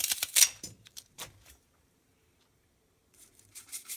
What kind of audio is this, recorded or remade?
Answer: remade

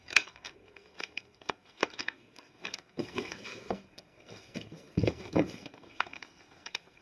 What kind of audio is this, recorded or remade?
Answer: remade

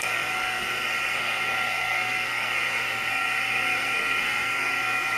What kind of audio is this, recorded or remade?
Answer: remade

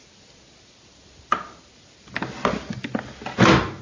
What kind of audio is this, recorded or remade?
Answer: recorded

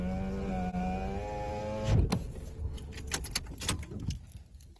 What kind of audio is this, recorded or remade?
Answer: recorded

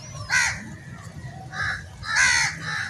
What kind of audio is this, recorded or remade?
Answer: recorded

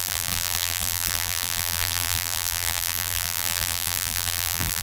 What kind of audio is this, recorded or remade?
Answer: remade